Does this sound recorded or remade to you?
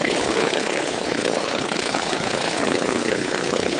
remade